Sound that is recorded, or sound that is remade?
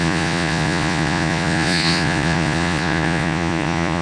remade